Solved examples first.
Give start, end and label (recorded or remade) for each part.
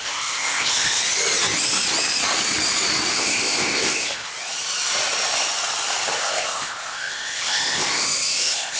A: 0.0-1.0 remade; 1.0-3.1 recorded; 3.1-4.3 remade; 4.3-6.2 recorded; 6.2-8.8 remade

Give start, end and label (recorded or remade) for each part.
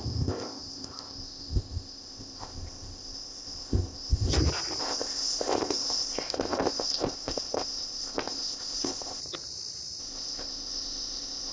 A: 0.0-4.3 remade; 4.3-4.8 recorded; 4.8-9.2 remade; 9.2-10.0 recorded; 10.0-11.5 remade